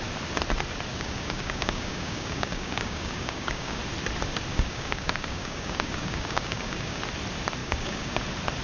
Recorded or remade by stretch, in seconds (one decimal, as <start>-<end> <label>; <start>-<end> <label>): 0.0-0.9 recorded; 0.9-3.8 remade; 3.8-4.5 recorded; 4.5-7.0 remade; 7.0-7.6 recorded; 7.6-8.2 remade; 8.2-8.6 recorded